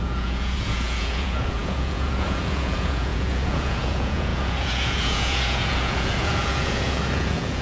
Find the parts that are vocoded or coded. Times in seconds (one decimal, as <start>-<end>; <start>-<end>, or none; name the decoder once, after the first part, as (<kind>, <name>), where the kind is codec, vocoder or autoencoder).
0.0-7.6 (vocoder, Vocos)